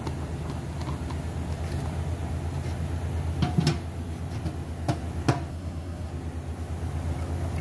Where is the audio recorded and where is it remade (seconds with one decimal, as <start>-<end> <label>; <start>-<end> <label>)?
0.0-5.5 recorded; 5.5-6.1 remade; 6.1-7.6 recorded